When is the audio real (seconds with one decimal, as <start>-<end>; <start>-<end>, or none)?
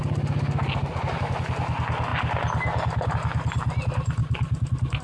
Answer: 0.0-4.2